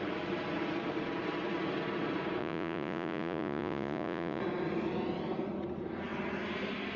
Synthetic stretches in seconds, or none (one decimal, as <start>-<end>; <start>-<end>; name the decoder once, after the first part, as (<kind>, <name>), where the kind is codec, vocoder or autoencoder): 2.4-4.4 (vocoder, Vocos)